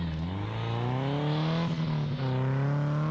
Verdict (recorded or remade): recorded